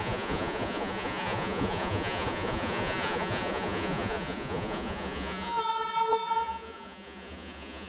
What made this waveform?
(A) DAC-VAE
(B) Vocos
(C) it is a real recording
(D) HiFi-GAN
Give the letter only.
B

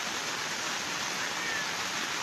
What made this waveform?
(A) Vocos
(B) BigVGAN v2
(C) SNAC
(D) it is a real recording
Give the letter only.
D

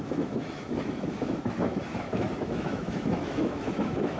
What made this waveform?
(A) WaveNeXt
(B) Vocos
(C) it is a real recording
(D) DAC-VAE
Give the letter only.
D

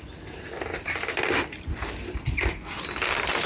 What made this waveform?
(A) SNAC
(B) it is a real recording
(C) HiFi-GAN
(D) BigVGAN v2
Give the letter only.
B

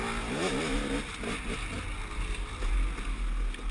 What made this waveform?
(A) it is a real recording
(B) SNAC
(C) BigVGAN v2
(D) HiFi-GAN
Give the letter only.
A